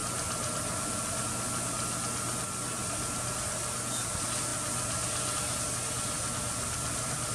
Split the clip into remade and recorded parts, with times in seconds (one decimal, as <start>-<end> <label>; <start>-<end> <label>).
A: 0.0-7.3 recorded